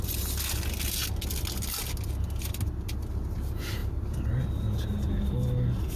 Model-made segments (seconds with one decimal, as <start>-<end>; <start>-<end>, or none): none